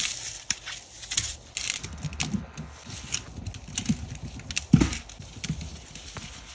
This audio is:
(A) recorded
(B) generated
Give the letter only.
A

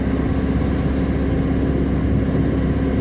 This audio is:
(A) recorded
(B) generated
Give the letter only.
A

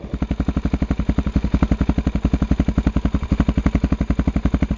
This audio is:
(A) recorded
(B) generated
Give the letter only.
A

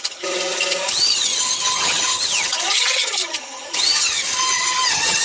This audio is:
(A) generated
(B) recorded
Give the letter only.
A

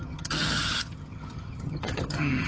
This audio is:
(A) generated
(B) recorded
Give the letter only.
A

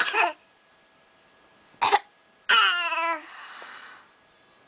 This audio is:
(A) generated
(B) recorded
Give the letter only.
B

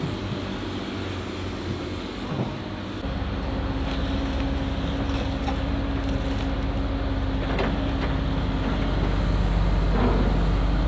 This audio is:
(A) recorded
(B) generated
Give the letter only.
A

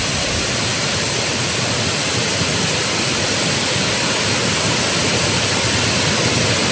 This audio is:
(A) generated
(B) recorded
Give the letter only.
B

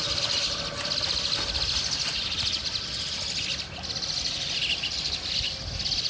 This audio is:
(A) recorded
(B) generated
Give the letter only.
A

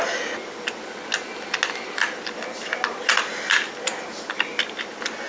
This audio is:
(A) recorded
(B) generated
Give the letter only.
A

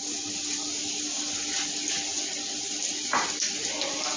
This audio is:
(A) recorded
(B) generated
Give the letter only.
A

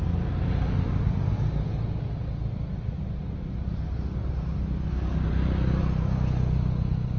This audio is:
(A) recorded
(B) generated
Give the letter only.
A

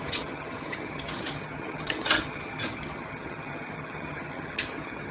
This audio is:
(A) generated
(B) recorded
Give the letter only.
A